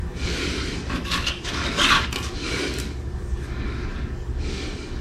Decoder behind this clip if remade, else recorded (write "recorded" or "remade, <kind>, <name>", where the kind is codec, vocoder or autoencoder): remade, codec, DAC